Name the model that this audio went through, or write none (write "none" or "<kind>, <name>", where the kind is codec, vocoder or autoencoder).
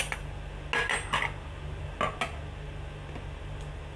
none